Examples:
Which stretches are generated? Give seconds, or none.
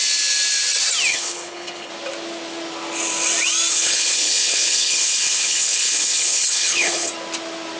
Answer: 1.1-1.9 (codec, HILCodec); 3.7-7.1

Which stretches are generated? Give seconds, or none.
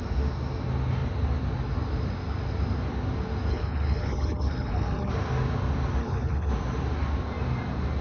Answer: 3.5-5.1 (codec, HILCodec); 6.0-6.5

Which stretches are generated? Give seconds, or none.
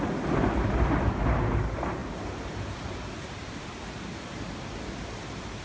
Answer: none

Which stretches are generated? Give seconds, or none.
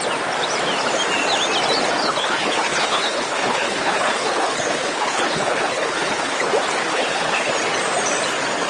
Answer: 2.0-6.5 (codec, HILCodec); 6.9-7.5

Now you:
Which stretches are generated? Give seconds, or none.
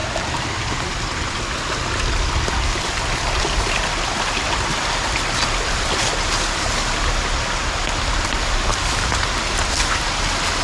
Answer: none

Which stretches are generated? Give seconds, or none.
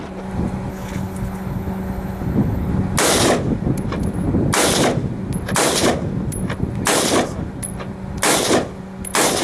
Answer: 0.7-2.7 (codec, HILCodec)